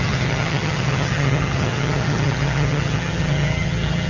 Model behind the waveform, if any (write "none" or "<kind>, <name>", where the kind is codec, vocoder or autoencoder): vocoder, HiFi-GAN